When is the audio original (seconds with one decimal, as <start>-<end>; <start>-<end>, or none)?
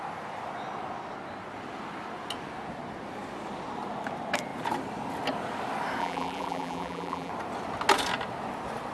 0.0-6.0; 7.3-8.9